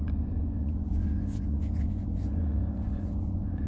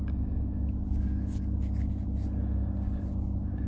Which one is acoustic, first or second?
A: second